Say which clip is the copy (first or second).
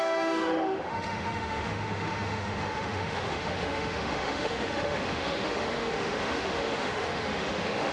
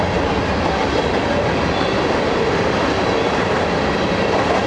first